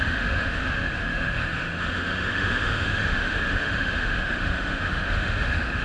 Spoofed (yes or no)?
yes